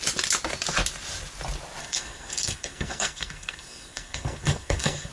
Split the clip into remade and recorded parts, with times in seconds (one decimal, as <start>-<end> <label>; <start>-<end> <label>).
0.0-1.8 recorded; 1.8-5.1 remade

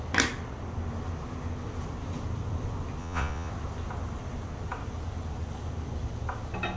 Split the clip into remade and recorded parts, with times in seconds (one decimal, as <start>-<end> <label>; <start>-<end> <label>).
0.0-3.0 recorded; 3.0-3.5 remade; 3.5-6.8 recorded

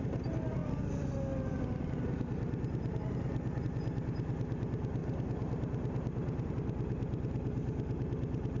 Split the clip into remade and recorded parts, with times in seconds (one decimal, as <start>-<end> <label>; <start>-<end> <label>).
0.0-8.6 recorded

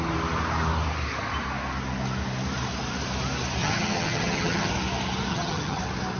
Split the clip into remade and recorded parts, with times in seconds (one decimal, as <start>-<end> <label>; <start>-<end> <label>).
0.0-3.6 recorded; 3.6-4.7 remade; 4.7-5.3 recorded; 5.3-5.8 remade; 5.8-6.2 recorded

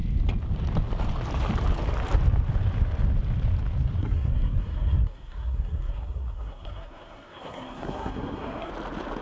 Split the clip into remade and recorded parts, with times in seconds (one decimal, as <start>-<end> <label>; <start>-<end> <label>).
0.0-4.0 recorded; 4.0-8.7 remade; 8.7-9.2 recorded

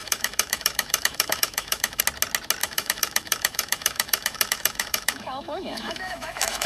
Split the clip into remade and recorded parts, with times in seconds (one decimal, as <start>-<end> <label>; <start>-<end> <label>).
0.0-2.0 remade; 2.0-2.6 recorded; 2.6-6.7 remade

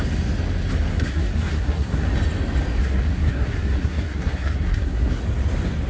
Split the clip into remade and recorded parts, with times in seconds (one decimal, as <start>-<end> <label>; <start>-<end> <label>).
0.0-0.9 recorded; 0.9-2.1 remade; 2.1-2.8 recorded; 2.8-5.2 remade; 5.2-5.9 recorded